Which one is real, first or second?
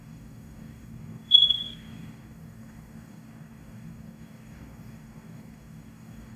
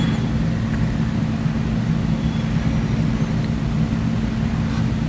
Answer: second